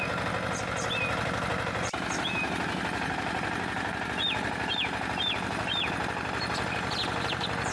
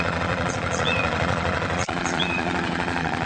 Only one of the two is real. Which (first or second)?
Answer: first